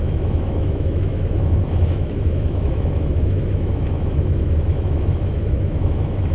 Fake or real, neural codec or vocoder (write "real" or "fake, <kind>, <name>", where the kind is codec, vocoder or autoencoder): fake, autoencoder, DAC-VAE